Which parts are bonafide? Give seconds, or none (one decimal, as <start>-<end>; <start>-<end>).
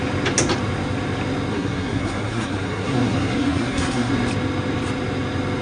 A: 0.0-1.5; 4.1-5.6